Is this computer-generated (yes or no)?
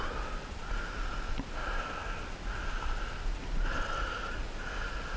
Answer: no